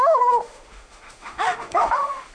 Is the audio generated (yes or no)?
yes